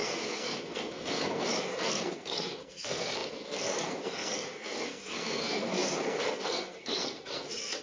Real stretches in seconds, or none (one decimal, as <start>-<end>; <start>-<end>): none